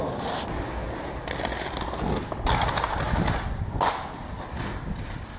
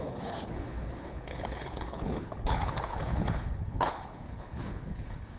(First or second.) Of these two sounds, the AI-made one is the second